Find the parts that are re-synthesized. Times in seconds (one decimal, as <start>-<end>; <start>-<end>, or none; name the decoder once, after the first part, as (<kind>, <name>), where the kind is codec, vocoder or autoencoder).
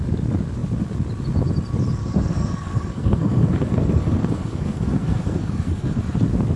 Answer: 2.0-6.0 (codec, SNAC)